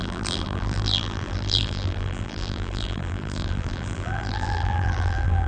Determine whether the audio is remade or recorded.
remade